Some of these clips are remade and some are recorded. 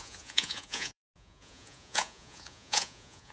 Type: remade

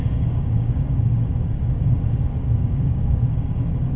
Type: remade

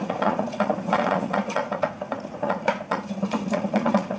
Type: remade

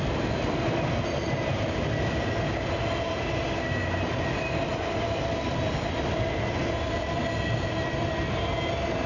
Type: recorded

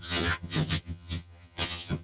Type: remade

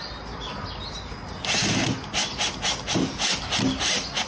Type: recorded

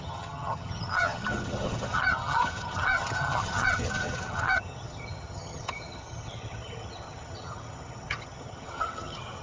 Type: remade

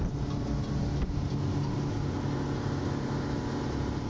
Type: recorded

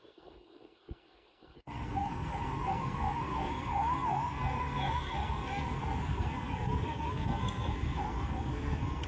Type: remade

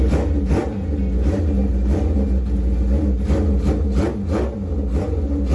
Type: recorded